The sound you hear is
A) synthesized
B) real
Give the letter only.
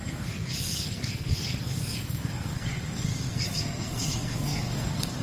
A